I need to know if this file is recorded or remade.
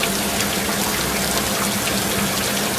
recorded